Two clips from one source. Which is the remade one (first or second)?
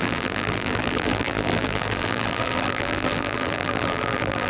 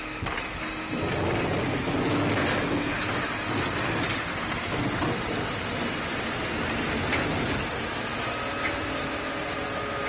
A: first